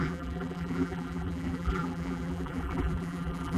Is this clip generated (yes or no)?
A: yes